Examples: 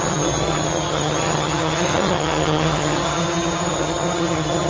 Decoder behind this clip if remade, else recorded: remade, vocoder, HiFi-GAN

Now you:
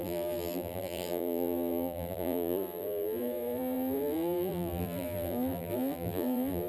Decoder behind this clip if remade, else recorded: remade, vocoder, BigVGAN v2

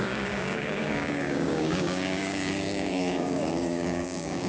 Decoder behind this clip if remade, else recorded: remade, codec, DAC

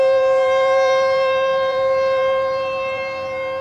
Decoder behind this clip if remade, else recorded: remade, vocoder, BigVGAN v2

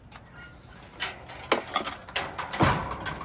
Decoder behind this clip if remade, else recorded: recorded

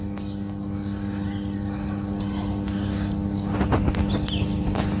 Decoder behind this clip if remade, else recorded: recorded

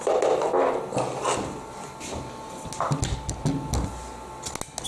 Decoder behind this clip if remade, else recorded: recorded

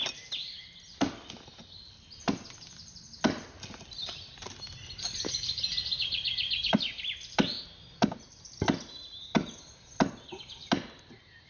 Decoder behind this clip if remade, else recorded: recorded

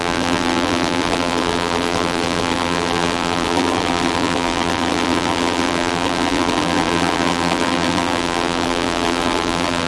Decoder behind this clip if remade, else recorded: remade, vocoder, BigVGAN v2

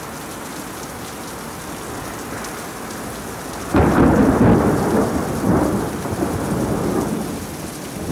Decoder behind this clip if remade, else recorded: recorded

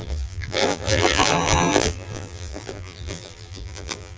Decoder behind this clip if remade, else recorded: remade, vocoder, BigVGAN v2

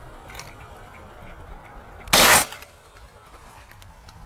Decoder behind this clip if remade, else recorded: recorded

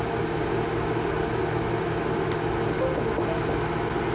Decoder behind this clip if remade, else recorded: recorded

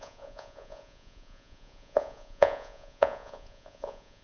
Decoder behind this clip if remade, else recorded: remade, vocoder, Vocos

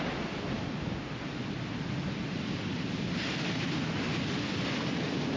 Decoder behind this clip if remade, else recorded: recorded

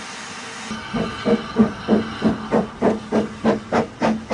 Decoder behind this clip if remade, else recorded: recorded